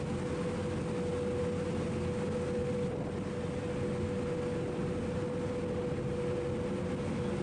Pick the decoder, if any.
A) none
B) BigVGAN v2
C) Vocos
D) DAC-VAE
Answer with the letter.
A